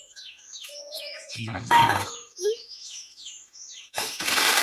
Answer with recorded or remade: remade